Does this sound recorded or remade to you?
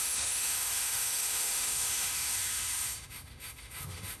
remade